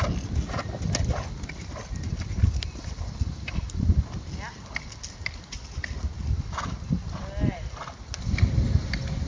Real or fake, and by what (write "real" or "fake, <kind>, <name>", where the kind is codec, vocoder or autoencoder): real